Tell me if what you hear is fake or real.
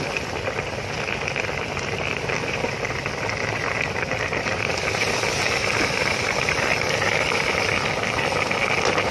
fake